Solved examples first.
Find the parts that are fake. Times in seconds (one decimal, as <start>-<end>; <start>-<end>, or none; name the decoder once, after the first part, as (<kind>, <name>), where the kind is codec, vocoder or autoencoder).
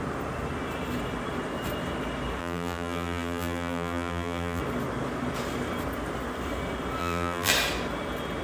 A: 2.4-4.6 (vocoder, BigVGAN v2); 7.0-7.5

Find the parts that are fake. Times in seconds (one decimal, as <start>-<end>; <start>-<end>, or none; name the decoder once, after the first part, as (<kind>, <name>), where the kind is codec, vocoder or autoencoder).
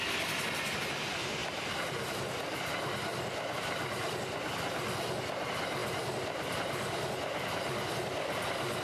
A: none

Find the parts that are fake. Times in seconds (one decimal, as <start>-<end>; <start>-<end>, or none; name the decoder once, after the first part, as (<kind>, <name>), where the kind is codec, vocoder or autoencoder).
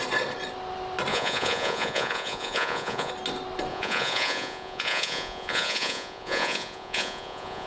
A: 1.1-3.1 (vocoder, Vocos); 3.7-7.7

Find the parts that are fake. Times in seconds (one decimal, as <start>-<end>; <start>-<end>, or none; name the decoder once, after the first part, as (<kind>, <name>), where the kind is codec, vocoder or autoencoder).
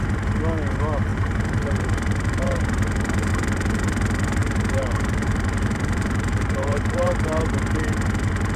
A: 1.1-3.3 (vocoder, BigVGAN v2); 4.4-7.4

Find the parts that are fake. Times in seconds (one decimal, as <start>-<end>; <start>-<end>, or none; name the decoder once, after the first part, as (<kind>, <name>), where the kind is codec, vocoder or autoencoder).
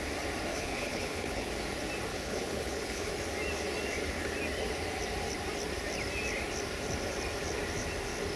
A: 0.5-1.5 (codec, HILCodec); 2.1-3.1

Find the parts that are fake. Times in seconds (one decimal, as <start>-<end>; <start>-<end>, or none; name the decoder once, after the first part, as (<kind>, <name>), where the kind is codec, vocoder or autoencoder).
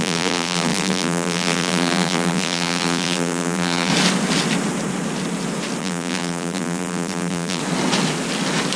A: 0.0-3.9 (vocoder, BigVGAN v2); 5.8-7.6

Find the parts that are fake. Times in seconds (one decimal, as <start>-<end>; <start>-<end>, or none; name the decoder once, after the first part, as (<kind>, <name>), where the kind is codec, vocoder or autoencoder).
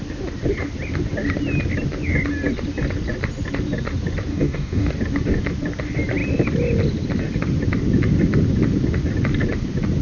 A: 4.3-4.9 (codec, DAC)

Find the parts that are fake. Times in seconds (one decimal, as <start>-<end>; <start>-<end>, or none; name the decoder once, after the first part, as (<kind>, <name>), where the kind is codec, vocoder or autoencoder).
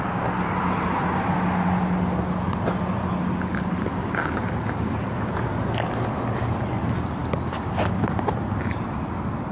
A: 4.0-4.6 (codec, DAC)